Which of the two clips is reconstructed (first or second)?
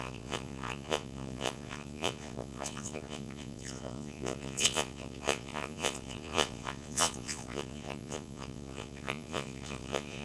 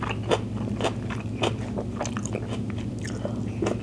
first